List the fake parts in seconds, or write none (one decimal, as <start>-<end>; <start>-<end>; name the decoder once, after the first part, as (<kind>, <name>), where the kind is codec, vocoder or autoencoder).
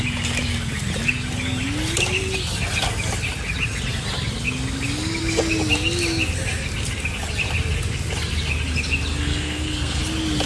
9.1-10.0 (codec, SNAC)